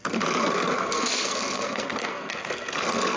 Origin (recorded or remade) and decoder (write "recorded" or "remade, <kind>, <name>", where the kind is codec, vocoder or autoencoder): remade, codec, SNAC